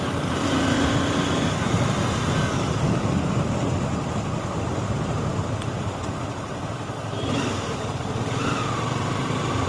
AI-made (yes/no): no